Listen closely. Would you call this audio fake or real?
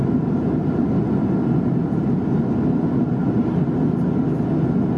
real